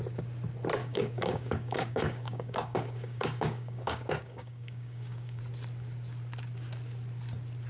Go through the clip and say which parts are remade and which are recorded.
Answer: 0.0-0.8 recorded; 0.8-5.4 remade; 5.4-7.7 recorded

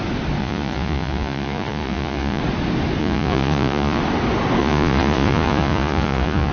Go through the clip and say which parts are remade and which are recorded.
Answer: 0.0-0.4 recorded; 0.4-2.4 remade; 2.4-3.0 recorded; 3.0-4.0 remade; 4.0-4.6 recorded; 4.6-6.5 remade

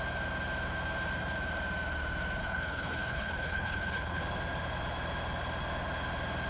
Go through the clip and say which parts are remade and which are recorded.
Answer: 0.0-2.4 recorded; 2.4-4.2 remade; 4.2-6.5 recorded

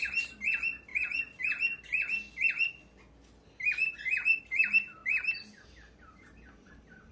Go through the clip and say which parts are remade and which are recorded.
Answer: 0.0-5.0 recorded; 5.0-7.1 remade

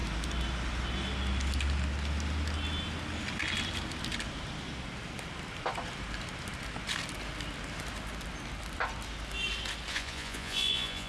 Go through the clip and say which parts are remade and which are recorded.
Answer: 0.0-9.9 recorded; 9.9-11.1 remade